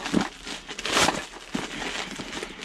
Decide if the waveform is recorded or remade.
recorded